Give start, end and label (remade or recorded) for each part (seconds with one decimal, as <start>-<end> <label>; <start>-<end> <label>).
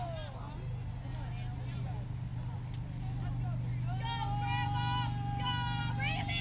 0.0-6.4 recorded